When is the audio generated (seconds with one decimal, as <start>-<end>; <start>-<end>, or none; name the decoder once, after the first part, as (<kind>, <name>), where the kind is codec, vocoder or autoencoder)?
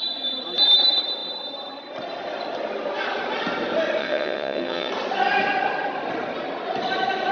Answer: 4.0-4.9 (vocoder, WaveNeXt)